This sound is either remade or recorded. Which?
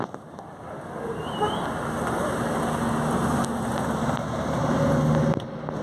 recorded